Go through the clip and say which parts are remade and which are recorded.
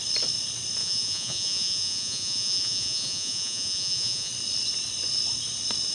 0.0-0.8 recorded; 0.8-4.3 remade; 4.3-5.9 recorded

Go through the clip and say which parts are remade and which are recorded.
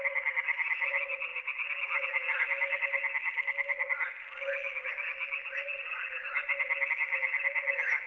0.0-8.1 recorded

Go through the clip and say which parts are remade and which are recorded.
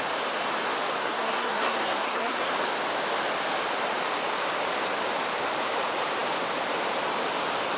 0.0-1.0 recorded; 1.0-2.5 remade; 2.5-7.8 recorded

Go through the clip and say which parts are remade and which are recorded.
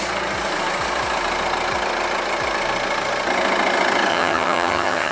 0.0-4.1 recorded; 4.1-5.1 remade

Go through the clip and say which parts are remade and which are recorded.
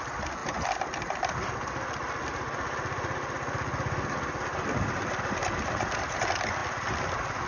0.0-7.5 recorded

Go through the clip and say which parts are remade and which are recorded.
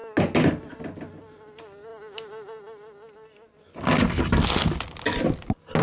0.0-5.8 recorded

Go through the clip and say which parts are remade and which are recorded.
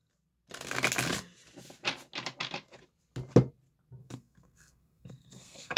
0.0-4.0 recorded; 4.0-5.8 remade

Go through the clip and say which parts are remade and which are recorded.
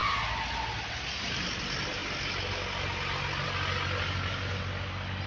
0.0-0.9 recorded; 0.9-2.0 remade; 2.0-5.3 recorded